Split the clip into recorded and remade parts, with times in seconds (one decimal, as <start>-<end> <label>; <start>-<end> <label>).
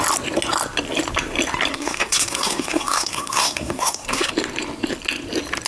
0.0-1.7 recorded; 1.7-4.3 remade; 4.3-5.7 recorded